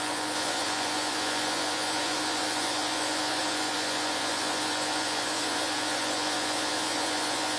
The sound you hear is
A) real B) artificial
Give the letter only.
B